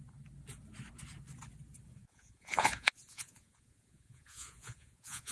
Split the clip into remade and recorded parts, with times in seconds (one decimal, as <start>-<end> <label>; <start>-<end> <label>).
0.0-1.9 recorded; 1.9-5.3 remade